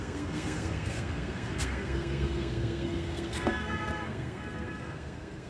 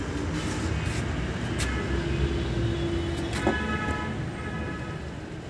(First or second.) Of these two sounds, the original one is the second